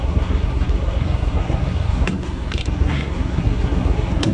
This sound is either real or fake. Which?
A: fake